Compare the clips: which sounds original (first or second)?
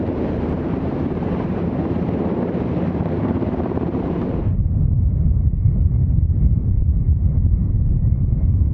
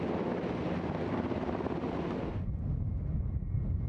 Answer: second